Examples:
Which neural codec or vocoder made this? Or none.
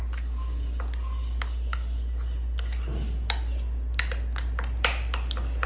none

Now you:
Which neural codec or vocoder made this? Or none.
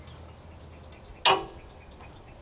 none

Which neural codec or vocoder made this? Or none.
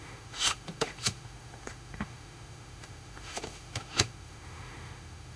autoencoder, DAC-VAE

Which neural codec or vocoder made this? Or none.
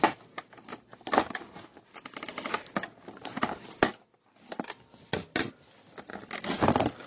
none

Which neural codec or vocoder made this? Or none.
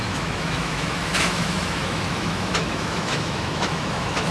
autoencoder, DAC-VAE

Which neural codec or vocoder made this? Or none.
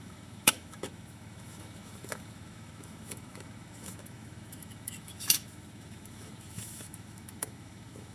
autoencoder, DAC-VAE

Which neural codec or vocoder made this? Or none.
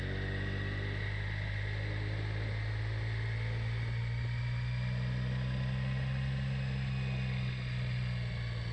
none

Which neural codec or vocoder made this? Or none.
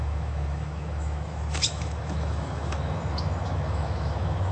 autoencoder, DAC-VAE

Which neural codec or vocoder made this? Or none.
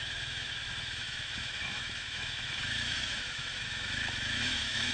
autoencoder, DAC-VAE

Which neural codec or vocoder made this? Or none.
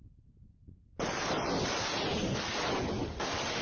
none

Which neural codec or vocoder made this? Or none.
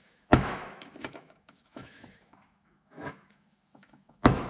autoencoder, DAC-VAE